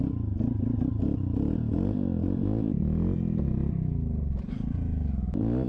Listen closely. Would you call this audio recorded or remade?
recorded